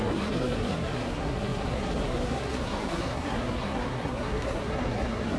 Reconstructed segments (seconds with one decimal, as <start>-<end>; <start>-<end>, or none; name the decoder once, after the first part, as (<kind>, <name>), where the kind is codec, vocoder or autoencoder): 0.0-5.4 (codec, SNAC)